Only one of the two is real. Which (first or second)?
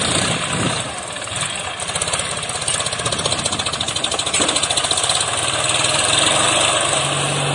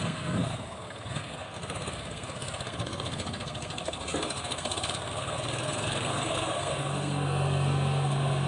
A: first